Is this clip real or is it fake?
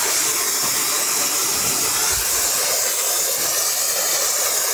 real